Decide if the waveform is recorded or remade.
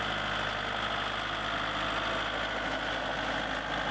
recorded